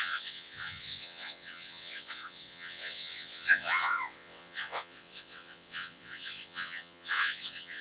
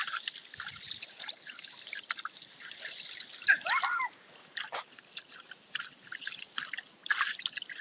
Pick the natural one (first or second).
second